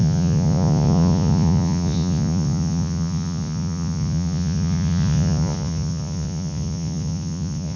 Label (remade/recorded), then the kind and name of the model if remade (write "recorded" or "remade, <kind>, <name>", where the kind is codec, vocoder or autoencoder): remade, vocoder, Vocos